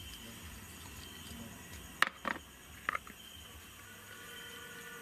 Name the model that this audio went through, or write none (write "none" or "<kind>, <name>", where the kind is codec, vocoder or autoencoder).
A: none